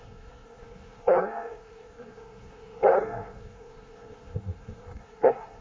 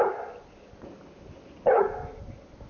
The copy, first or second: first